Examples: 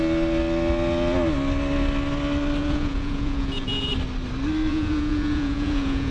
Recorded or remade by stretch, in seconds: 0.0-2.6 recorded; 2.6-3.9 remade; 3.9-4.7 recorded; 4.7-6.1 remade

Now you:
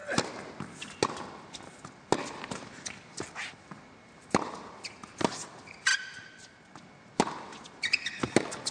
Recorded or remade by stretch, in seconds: 0.0-8.7 recorded

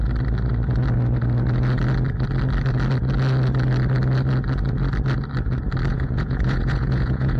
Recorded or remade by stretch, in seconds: 0.0-5.9 recorded; 5.9-7.4 remade

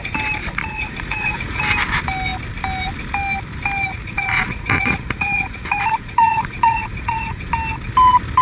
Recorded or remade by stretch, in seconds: 0.0-0.4 recorded; 0.4-1.6 remade; 1.6-3.9 recorded; 3.9-7.5 remade; 7.5-8.4 recorded

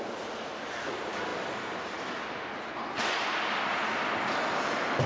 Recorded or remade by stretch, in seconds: 0.0-5.1 recorded